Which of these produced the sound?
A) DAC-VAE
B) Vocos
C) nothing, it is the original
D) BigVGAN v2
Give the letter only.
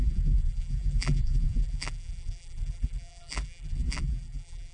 D